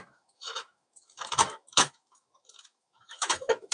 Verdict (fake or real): fake